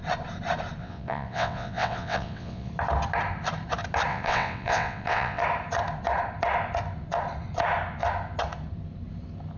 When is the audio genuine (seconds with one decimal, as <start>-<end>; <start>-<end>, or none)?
0.0-0.8; 2.7-4.1; 5.4-9.6